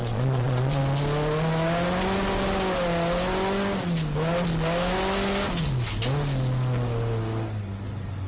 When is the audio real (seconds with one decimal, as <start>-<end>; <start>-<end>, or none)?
0.8-8.3